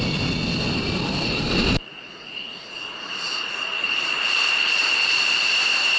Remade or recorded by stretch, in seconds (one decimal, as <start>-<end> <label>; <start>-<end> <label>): 0.0-1.9 recorded; 1.9-5.5 remade; 5.5-6.0 recorded